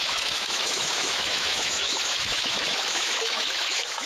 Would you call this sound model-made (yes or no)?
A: yes